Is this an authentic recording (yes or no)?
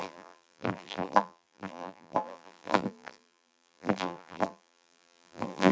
no